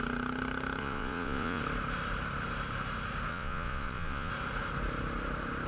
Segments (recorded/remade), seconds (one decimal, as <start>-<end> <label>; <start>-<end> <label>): 0.0-0.8 recorded; 0.8-1.6 remade; 1.6-3.3 recorded; 3.3-4.3 remade; 4.3-5.7 recorded